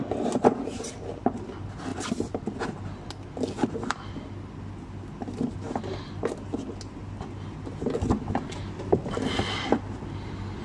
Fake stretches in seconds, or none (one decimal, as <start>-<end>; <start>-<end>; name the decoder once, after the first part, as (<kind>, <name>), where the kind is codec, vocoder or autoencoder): 1.9-2.6 (vocoder, BigVGAN v2)